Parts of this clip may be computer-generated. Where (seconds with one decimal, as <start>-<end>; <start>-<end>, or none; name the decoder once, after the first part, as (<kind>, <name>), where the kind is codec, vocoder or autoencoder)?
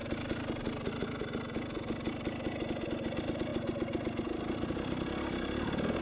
none